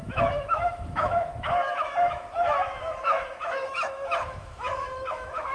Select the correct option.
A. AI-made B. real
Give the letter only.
A